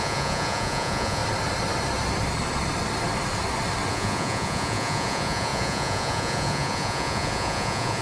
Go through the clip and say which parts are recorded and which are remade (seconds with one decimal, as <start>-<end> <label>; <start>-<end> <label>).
0.0-1.2 remade; 1.2-3.9 recorded; 3.9-8.0 remade